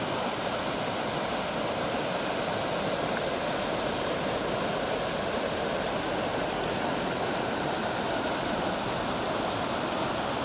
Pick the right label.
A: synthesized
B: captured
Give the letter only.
B